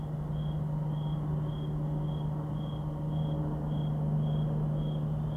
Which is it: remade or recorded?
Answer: recorded